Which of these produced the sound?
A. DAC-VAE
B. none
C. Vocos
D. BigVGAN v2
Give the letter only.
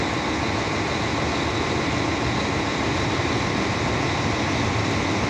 B